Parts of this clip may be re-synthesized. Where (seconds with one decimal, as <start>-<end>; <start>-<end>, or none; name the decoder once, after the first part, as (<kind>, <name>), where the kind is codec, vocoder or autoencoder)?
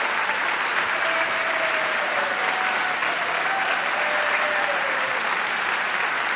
none